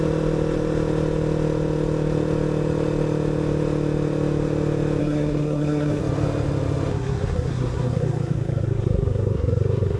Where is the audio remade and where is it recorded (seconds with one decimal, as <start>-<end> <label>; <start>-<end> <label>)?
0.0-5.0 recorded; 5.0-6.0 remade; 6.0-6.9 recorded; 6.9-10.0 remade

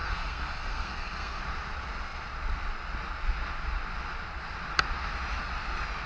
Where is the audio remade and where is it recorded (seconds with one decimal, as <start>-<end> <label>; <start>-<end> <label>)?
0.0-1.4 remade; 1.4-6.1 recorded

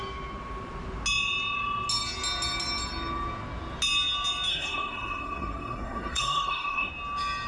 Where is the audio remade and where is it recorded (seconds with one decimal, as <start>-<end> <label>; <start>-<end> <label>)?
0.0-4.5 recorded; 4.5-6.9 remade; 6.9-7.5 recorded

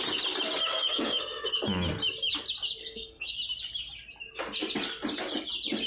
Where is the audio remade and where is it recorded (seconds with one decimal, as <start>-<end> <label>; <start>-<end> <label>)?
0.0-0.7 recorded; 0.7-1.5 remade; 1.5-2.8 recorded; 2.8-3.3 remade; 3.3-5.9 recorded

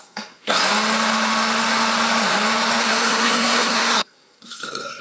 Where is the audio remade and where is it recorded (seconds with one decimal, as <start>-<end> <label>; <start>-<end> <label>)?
0.0-0.6 remade; 0.6-2.8 recorded; 2.8-5.0 remade

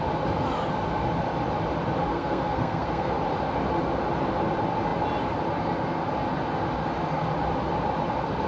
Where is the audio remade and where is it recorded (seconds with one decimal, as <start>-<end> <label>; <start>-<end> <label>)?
0.0-2.1 recorded; 2.1-3.1 remade; 3.1-8.5 recorded